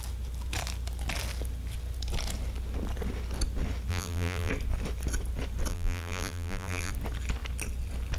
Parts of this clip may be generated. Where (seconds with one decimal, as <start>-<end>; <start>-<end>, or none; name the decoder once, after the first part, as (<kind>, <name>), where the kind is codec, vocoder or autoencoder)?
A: 3.9-4.5 (vocoder, BigVGAN v2); 5.7-6.9